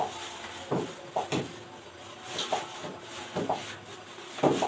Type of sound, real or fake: real